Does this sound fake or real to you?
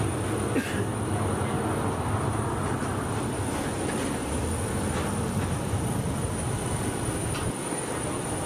real